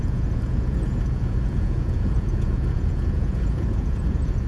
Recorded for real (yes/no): no